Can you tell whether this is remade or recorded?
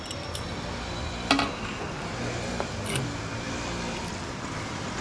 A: recorded